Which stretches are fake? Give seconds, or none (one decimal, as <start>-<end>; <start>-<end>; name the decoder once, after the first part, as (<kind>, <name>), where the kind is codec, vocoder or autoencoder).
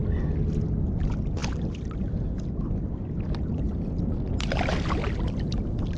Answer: none